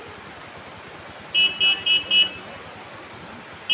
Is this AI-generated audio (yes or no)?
no